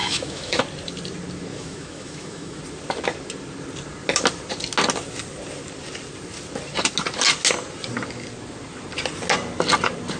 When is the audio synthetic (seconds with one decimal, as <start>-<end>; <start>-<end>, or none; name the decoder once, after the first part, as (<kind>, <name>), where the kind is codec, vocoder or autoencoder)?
0.0-0.6 (autoencoder, DAC-VAE); 1.5-2.6